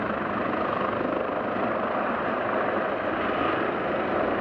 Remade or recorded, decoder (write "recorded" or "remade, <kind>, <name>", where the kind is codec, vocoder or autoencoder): recorded